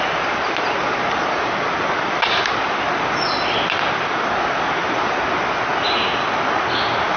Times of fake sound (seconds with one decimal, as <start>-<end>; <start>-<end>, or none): none